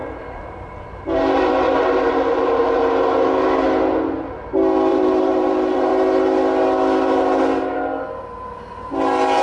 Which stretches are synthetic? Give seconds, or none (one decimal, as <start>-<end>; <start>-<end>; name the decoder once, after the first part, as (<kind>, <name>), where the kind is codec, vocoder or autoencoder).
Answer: 0.0-2.6 (vocoder, BigVGAN v2); 4.9-5.9